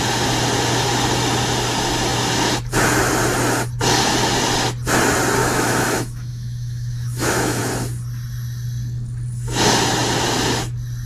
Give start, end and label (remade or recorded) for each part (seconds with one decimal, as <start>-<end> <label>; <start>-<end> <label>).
0.0-5.4 recorded; 5.4-7.6 remade; 7.6-11.1 recorded